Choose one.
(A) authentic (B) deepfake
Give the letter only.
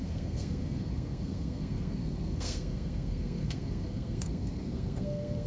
B